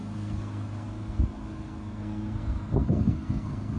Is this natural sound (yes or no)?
no